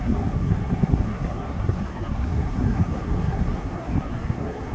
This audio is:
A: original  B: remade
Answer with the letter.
B